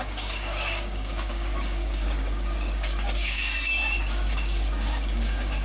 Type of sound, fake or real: fake